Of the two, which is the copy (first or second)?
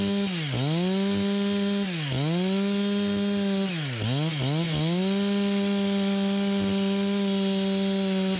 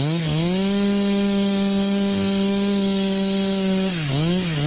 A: second